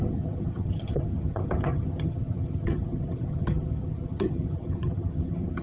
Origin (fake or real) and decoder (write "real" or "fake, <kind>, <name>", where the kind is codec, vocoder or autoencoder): fake, vocoder, HiFi-GAN